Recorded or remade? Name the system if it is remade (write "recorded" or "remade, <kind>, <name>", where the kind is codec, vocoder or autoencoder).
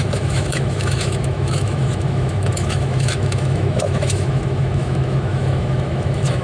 remade, autoencoder, DAC-VAE